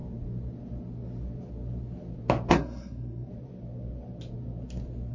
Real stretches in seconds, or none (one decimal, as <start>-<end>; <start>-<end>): 0.0-2.5; 3.3-5.1